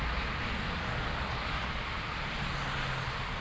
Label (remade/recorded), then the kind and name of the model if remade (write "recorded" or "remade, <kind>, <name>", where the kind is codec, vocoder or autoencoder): recorded